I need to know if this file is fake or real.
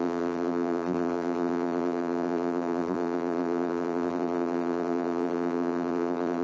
fake